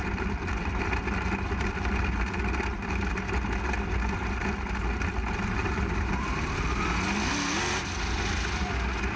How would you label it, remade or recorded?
recorded